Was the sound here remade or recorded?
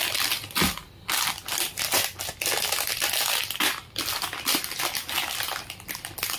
recorded